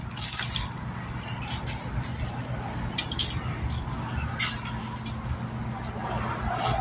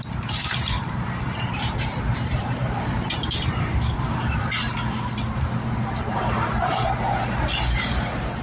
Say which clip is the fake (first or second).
second